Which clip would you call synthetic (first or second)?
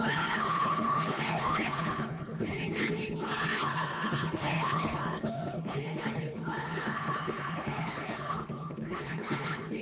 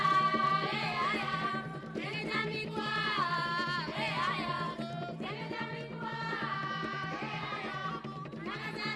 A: first